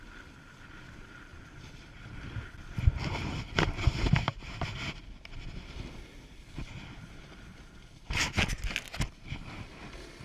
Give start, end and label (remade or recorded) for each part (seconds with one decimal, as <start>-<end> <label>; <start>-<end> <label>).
0.0-1.3 recorded; 1.3-4.5 remade; 4.5-10.2 recorded